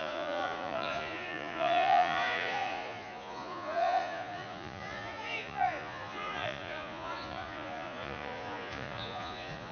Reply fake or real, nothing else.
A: fake